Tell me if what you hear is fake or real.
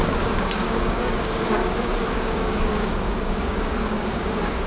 fake